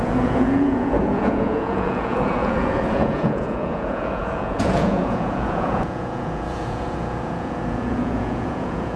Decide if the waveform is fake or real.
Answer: fake